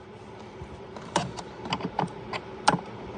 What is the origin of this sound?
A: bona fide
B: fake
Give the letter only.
B